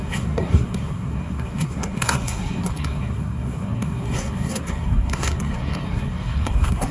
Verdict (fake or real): fake